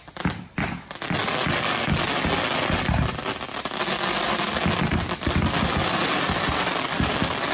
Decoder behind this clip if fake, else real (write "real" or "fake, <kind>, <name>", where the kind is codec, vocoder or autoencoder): real